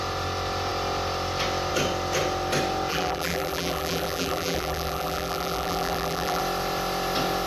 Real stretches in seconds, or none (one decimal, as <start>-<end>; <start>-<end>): 0.0-2.9; 6.4-7.5